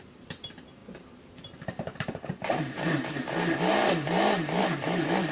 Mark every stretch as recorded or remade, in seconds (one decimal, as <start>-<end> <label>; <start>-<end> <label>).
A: 0.0-5.3 remade